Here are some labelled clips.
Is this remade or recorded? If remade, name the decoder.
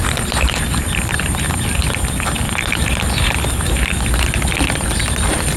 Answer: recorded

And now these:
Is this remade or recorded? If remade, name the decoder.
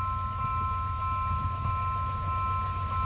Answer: recorded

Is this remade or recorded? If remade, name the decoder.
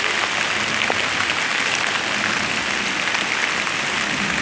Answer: recorded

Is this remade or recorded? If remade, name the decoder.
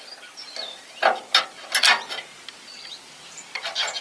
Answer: recorded